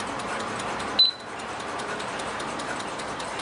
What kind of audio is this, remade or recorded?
recorded